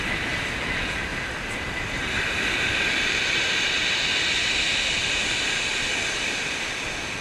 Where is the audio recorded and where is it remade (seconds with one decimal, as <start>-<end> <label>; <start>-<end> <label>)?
0.0-7.2 recorded